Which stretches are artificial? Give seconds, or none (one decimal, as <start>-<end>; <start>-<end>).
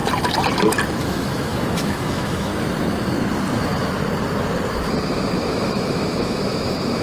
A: 1.0-2.5; 5.5-7.0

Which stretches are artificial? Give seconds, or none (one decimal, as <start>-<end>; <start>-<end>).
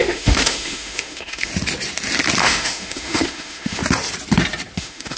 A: 0.0-1.5; 2.4-3.8; 4.8-5.2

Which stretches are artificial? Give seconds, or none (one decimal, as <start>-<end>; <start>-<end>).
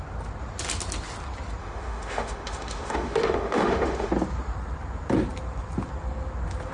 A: 1.6-4.1